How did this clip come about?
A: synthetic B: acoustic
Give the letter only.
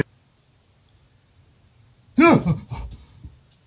B